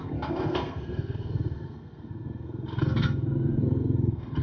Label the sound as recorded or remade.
remade